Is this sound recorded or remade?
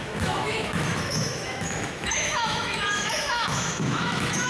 remade